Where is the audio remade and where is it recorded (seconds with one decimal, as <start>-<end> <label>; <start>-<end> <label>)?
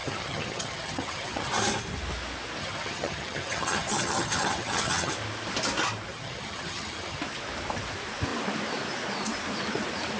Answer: 0.0-1.5 remade; 1.5-2.6 recorded; 2.6-5.1 remade; 5.1-6.1 recorded; 6.1-7.2 remade; 7.2-10.2 recorded